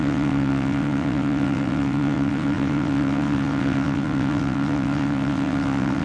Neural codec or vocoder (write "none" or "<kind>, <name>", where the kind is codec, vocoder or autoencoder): vocoder, WaveNeXt